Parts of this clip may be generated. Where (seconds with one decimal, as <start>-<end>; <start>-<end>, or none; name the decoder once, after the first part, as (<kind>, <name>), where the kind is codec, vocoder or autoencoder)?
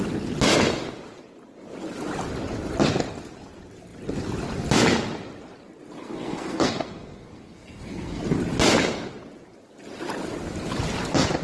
6.0-8.2 (codec, SNAC)